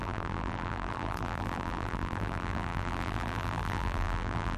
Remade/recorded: remade